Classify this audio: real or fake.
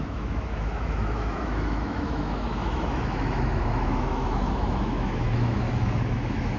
fake